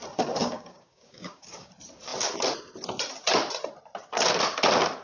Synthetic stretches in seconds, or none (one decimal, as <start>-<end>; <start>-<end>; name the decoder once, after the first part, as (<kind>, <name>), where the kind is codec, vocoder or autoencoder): 0.4-1.7 (codec, DAC)

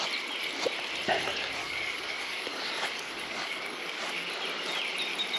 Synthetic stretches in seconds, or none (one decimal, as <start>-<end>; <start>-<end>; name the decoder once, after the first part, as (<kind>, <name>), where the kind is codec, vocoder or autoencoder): 1.6-4.3 (codec, DAC)

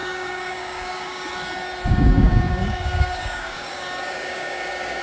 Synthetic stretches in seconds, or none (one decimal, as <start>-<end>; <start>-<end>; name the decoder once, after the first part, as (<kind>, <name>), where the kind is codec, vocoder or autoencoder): 0.0-1.3 (codec, DAC); 1.9-5.0